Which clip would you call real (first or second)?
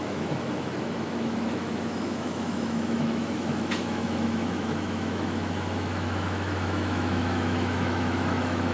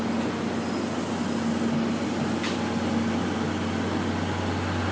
second